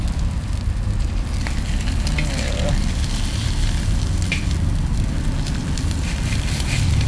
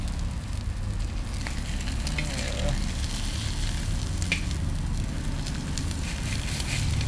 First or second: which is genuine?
second